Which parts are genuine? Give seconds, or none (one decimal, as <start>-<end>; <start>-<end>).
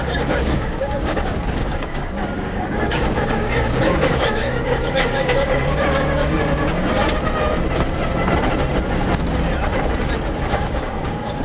7.0-10.4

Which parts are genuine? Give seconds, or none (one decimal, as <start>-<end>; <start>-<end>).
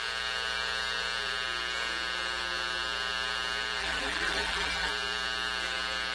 0.0-3.8; 4.9-6.1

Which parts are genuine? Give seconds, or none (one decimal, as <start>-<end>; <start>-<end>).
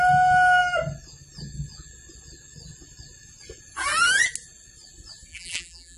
0.0-5.3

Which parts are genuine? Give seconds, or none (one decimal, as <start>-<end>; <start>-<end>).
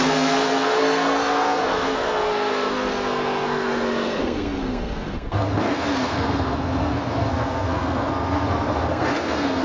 none